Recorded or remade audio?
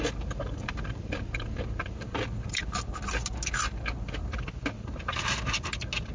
recorded